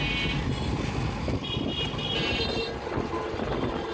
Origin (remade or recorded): recorded